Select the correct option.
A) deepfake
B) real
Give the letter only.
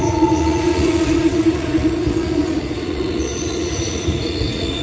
A